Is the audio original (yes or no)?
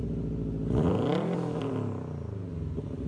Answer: yes